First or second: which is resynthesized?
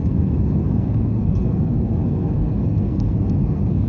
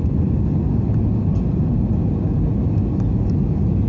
first